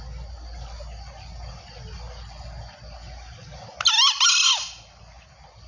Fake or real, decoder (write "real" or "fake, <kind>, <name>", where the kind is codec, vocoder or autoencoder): real